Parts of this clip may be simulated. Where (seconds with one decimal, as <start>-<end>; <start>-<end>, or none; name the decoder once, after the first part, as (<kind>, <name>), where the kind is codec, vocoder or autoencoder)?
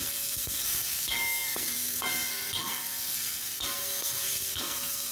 0.0-5.1 (codec, SNAC)